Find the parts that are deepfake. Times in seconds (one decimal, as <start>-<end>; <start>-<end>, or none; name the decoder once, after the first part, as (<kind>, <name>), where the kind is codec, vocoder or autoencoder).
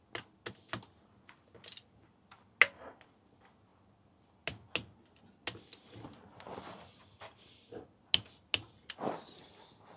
none